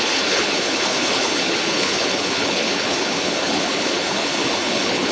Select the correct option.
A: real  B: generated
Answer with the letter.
B